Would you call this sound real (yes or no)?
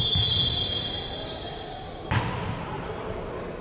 yes